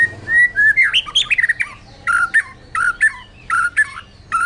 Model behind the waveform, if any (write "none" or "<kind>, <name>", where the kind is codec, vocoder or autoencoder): none